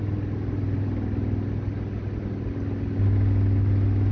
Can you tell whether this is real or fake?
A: real